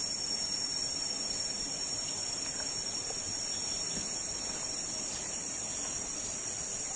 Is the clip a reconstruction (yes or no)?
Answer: no